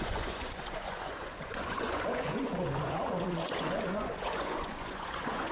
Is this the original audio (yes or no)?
no